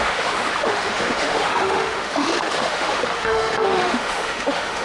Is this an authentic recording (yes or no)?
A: no